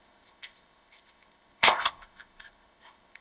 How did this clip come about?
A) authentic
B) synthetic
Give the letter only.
B